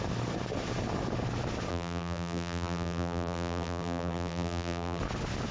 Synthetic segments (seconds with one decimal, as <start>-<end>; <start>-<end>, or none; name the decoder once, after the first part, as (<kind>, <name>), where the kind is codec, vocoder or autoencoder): 1.7-5.0 (vocoder, BigVGAN v2)